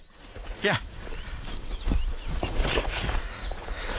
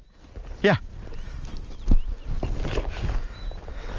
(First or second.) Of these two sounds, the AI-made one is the first